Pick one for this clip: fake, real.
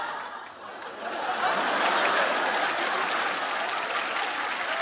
real